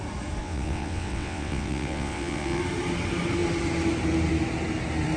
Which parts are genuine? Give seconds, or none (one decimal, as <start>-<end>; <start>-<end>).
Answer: 0.0-0.4; 2.6-5.2